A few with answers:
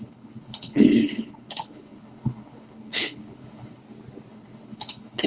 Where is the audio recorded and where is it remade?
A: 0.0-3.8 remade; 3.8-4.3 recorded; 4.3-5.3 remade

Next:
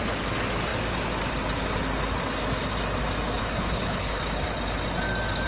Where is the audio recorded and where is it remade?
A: 0.0-3.4 recorded; 3.4-4.2 remade; 4.2-5.5 recorded

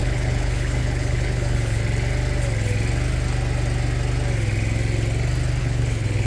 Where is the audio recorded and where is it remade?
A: 0.0-1.8 remade; 1.8-5.6 recorded; 5.6-6.3 remade

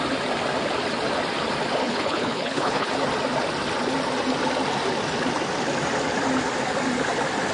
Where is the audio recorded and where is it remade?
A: 0.0-1.8 recorded; 1.8-2.9 remade; 2.9-7.5 recorded

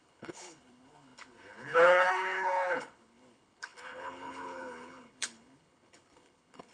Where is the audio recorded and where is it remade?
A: 0.0-6.7 remade

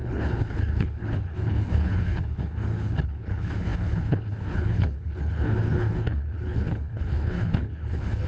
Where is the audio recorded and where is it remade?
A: 0.0-8.3 remade

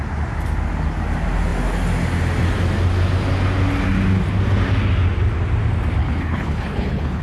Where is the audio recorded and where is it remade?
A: 0.0-6.0 recorded; 6.0-7.2 remade

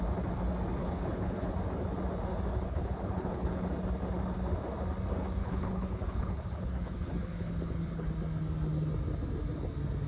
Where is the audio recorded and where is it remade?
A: 0.0-0.8 recorded; 0.8-1.5 remade; 1.5-2.5 recorded; 2.5-3.5 remade; 3.5-5.4 recorded; 5.4-8.1 remade; 8.1-10.1 recorded